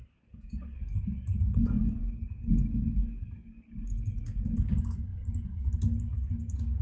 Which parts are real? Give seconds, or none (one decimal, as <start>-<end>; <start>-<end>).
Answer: 2.0-2.8; 5.1-6.0